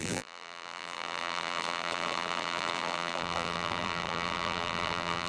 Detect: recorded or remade remade